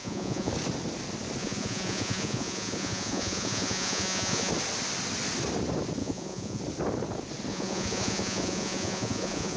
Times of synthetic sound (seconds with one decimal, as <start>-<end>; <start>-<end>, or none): 0.0-0.5; 1.4-4.5; 6.0-6.6; 7.5-9.6